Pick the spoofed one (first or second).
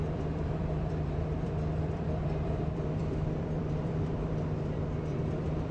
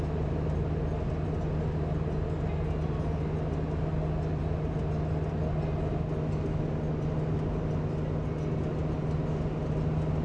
first